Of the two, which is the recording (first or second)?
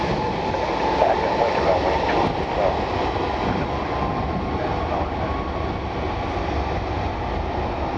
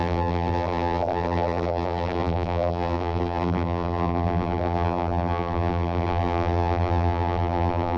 first